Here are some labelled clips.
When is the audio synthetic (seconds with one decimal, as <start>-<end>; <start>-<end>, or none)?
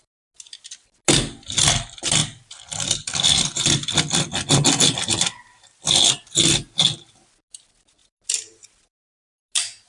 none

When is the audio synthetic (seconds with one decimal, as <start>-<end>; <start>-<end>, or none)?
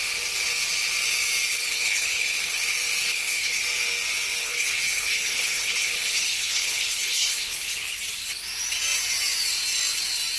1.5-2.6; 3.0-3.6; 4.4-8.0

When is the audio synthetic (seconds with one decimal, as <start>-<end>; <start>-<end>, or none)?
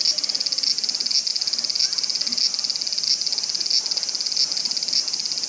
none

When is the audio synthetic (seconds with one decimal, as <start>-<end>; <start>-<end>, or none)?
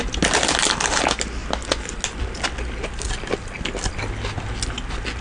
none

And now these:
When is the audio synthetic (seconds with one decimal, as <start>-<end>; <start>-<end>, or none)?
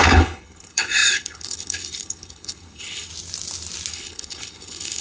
0.0-3.1; 3.9-5.0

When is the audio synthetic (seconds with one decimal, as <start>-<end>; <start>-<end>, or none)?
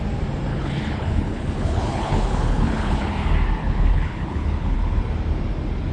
0.5-3.1; 3.6-5.0